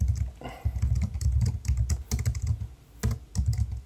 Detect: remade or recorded recorded